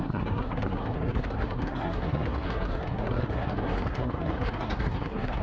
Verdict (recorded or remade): remade